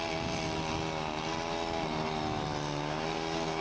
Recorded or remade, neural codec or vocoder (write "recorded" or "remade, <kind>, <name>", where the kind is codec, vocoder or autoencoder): recorded